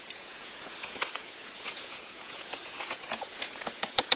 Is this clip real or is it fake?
fake